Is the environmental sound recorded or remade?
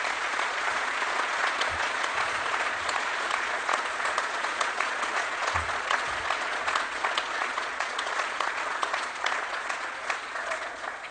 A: remade